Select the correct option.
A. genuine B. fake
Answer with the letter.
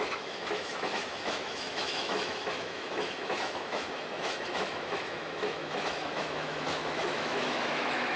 B